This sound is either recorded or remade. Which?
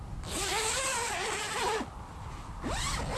recorded